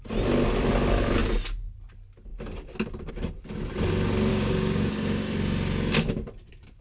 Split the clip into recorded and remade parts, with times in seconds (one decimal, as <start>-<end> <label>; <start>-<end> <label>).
0.0-4.3 recorded; 4.3-4.9 remade; 4.9-6.8 recorded